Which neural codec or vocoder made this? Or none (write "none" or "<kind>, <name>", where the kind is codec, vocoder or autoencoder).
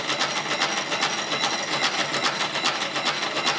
none